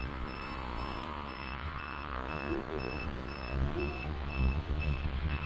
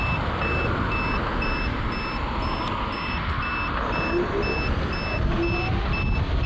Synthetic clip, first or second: first